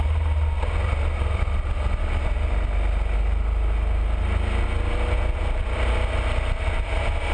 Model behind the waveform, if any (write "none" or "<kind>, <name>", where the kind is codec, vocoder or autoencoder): none